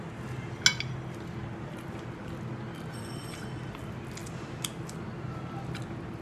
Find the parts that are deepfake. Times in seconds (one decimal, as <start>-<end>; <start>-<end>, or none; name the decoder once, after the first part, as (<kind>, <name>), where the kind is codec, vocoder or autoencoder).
none